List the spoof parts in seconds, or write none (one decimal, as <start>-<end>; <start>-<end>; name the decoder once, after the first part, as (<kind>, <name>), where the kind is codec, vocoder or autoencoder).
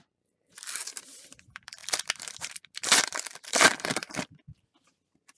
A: 0.0-1.8 (vocoder, BigVGAN v2); 3.5-5.4